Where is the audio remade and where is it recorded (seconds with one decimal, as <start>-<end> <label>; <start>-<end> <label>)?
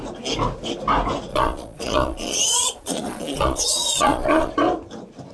0.0-1.3 recorded; 1.3-4.5 remade; 4.5-5.3 recorded